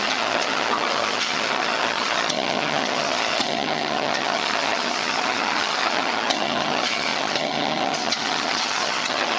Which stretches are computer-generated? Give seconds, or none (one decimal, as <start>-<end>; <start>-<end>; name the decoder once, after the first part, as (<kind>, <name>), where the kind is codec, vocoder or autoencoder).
0.0-9.4 (vocoder, HiFi-GAN)